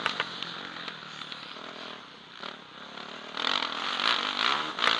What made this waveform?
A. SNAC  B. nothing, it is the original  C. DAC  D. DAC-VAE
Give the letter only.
B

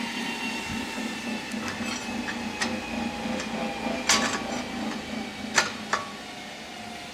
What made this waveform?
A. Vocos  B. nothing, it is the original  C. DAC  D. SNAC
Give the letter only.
B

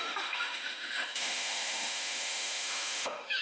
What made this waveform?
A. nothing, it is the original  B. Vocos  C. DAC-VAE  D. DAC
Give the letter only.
C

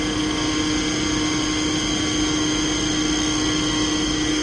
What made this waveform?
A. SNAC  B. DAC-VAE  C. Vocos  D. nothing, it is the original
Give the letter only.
D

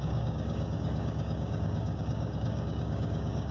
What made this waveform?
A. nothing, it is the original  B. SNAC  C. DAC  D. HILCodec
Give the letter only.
C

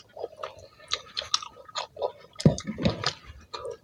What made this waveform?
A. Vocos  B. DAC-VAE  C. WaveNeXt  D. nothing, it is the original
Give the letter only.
D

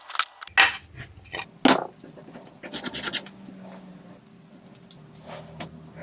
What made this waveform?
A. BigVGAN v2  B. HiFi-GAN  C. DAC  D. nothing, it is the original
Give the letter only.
D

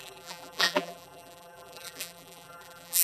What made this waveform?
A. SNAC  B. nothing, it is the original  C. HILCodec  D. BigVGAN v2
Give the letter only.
D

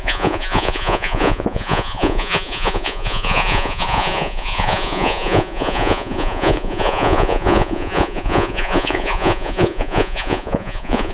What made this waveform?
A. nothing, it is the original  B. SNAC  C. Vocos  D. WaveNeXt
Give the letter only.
C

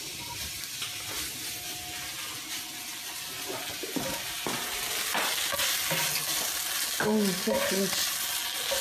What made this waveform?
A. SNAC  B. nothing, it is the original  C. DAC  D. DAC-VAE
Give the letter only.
B